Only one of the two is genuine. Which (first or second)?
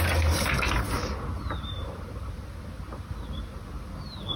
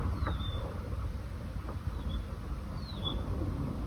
first